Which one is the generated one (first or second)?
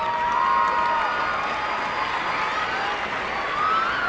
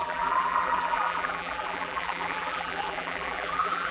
second